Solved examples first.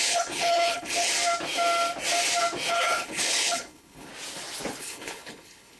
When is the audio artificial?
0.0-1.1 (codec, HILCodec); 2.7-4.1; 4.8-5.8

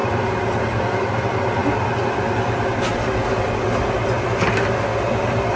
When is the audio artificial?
none

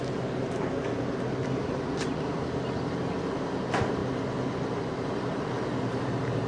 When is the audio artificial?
none

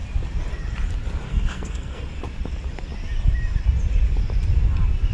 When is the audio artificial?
1.3-2.0 (codec, SNAC)